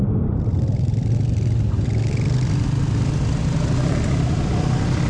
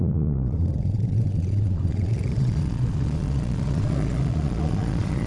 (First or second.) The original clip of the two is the first